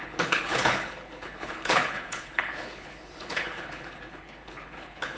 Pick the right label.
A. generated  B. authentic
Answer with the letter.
A